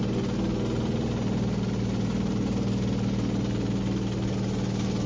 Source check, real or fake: real